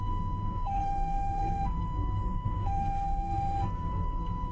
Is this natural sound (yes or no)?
no